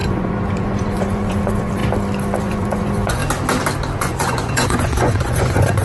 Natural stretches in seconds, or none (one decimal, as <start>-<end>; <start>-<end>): 1.8-2.4; 3.2-4.0